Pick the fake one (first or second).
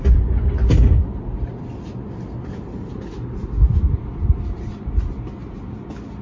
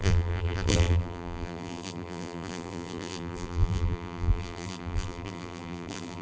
second